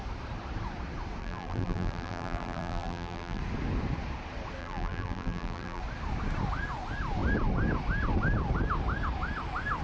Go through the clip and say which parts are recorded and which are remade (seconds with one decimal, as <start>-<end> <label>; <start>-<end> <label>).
0.0-1.2 recorded; 1.2-3.4 remade; 3.4-4.6 recorded; 4.6-5.8 remade; 5.8-9.8 recorded